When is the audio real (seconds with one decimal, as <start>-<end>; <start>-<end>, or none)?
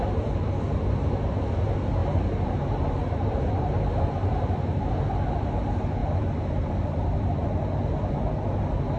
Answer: 0.0-2.0; 4.9-9.0